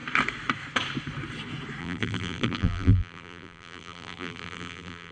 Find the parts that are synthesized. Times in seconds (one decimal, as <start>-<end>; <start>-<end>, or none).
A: 1.8-5.1